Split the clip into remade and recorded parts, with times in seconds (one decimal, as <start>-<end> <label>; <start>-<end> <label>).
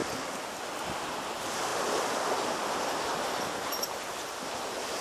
0.0-0.6 remade; 0.6-1.7 recorded; 1.7-5.0 remade